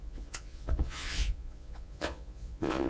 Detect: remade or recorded remade